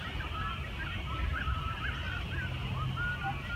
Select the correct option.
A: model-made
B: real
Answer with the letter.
B